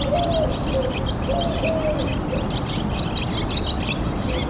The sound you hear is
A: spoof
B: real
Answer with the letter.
B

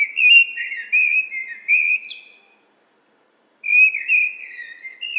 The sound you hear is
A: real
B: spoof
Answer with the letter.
A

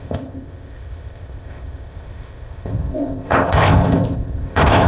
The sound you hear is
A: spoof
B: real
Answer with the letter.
A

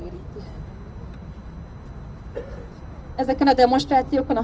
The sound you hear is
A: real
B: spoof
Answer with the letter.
A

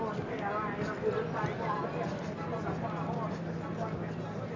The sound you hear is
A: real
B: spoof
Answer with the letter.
A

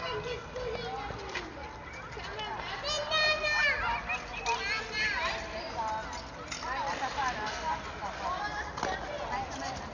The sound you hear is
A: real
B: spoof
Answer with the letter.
A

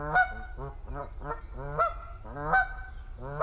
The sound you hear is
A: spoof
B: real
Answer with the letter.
B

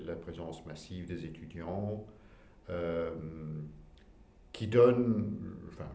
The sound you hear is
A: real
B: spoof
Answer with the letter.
A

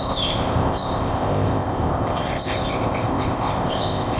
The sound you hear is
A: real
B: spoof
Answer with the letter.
B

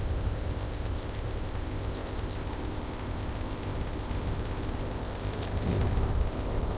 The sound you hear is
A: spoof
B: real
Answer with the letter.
A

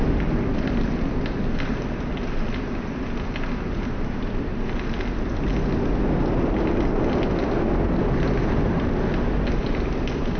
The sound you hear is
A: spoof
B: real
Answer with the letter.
B